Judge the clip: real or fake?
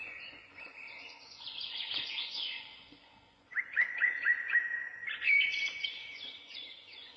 fake